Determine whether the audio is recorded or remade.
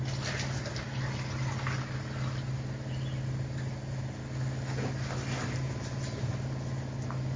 recorded